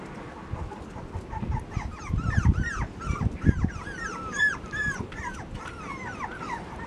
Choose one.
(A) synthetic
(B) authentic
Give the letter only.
A